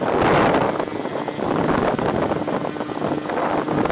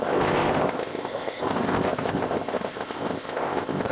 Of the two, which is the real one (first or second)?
first